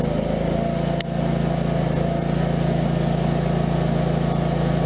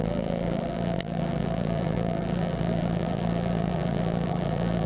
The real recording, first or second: first